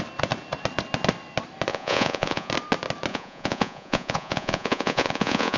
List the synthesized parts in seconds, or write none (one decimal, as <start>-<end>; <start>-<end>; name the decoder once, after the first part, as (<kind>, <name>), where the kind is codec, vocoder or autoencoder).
1.7-2.5 (vocoder, Vocos); 3.1-5.6